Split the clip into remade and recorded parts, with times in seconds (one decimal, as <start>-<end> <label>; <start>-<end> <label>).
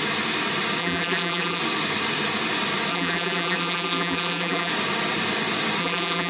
0.0-0.8 recorded; 0.8-1.6 remade; 1.6-2.9 recorded; 2.9-4.7 remade; 4.7-5.8 recorded; 5.8-6.3 remade